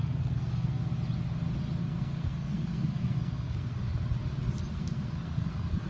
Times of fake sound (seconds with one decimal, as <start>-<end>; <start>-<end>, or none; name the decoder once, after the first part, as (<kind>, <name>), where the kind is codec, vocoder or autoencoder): 0.0-0.9 (codec, SNAC); 1.8-3.8; 4.7-5.9